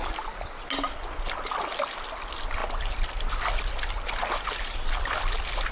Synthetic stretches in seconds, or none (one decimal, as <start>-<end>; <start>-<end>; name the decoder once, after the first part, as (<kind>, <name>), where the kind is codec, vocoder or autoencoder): none